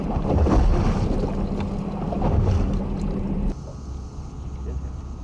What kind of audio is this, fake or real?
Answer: real